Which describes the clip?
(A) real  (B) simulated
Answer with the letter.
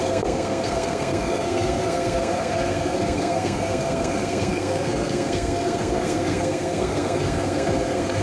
B